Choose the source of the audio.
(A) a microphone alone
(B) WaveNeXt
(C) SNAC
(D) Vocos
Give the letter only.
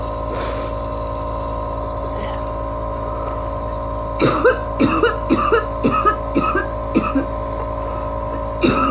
A